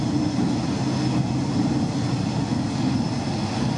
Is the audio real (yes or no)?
yes